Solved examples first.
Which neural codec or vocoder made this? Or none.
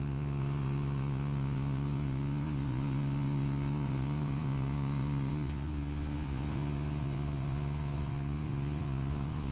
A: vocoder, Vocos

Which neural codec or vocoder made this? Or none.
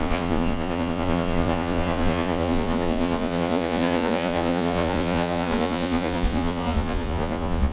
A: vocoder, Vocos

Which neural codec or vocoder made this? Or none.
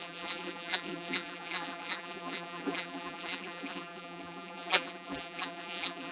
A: vocoder, BigVGAN v2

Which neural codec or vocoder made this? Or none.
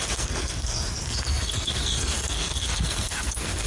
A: codec, SNAC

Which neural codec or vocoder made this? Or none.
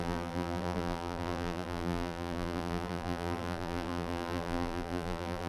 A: vocoder, BigVGAN v2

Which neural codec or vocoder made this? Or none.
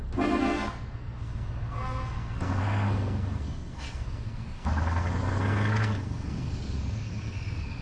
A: codec, SNAC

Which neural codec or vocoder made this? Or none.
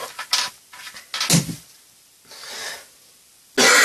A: none